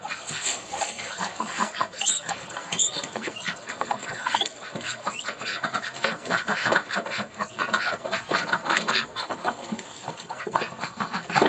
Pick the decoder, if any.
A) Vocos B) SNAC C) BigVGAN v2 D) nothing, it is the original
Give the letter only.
B